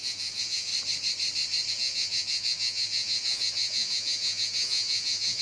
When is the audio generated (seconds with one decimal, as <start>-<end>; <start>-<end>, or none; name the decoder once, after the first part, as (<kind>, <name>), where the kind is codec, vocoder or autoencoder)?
0.0-0.7 (vocoder, Vocos); 1.7-5.4